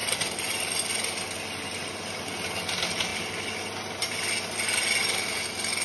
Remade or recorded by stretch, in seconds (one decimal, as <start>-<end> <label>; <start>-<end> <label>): 0.0-0.5 remade; 0.5-5.8 recorded